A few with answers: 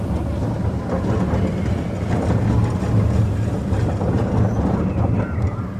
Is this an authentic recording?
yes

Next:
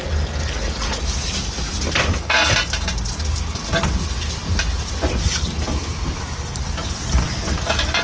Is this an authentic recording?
yes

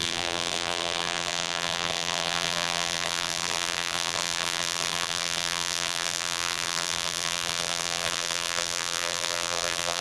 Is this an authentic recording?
no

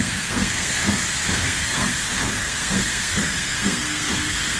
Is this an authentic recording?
no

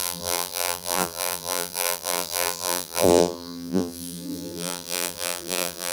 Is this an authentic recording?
no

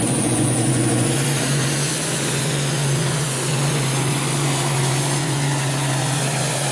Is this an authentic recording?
no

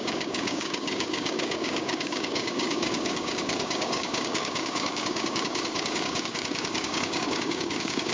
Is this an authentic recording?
no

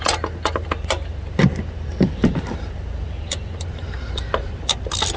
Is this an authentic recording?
no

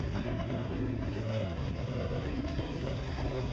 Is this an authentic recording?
no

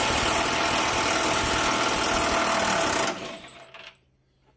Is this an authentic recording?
yes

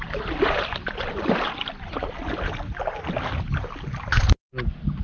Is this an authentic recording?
yes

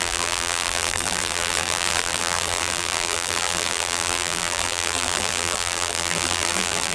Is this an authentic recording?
no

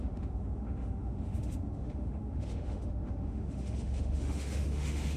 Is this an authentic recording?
no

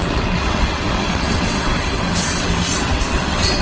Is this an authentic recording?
no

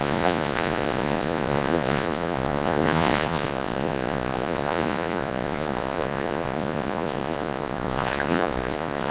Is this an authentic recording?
no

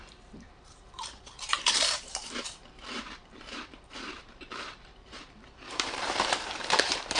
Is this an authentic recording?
no